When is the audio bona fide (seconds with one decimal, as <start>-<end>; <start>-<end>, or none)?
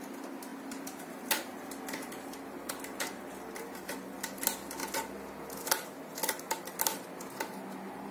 0.0-8.1